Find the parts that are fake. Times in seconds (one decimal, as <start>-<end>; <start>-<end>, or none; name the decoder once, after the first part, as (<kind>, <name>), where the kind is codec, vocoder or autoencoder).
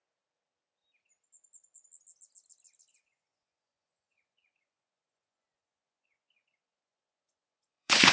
2.9-8.1 (vocoder, Vocos)